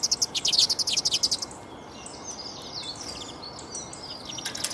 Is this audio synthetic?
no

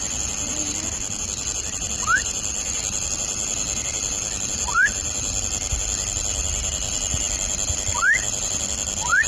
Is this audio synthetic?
no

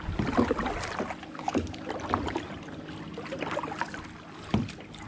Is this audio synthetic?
no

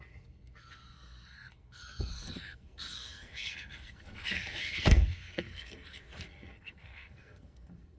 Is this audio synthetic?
yes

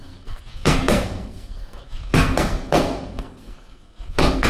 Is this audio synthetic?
yes